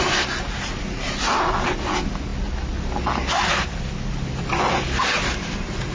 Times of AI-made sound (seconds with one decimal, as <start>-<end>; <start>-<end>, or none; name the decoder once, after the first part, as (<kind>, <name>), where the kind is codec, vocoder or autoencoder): none